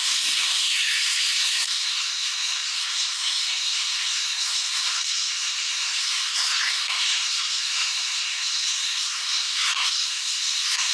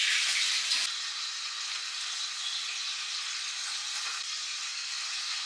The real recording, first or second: second